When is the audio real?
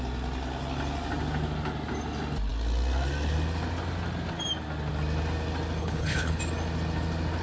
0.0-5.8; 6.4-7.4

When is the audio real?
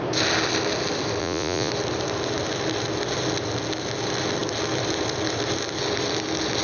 0.0-1.2; 1.7-6.6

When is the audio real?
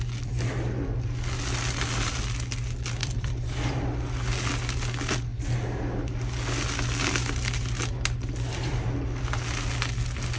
0.0-3.0; 3.7-10.4